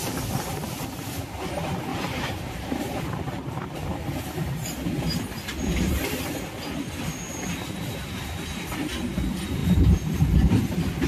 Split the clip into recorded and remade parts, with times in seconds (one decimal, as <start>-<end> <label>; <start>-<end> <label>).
0.0-1.9 recorded; 1.9-3.0 remade; 3.0-11.1 recorded